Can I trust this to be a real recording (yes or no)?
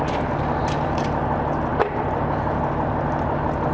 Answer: yes